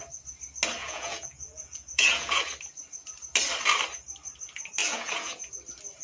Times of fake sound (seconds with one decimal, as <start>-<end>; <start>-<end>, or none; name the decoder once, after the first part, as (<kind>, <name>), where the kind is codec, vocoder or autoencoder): 0.8-2.4 (vocoder, Vocos); 4.8-5.5